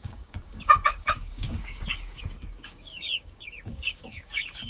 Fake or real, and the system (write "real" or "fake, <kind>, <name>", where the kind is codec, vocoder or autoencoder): fake, codec, DAC